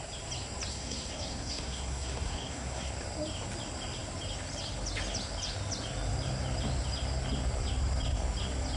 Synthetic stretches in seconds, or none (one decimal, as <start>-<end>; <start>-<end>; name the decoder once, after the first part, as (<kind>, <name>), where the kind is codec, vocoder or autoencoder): 0.7-2.9 (codec, SNAC)